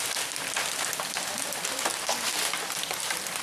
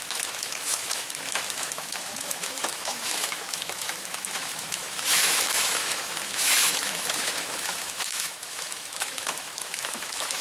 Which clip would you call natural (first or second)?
first